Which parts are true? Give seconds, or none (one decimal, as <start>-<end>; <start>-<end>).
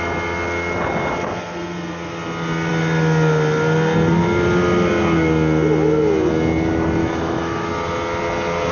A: 0.0-7.0; 7.7-8.7